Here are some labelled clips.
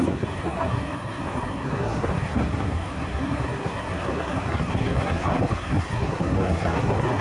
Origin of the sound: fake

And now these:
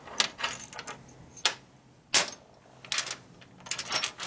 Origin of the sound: real